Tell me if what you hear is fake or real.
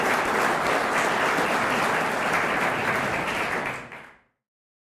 real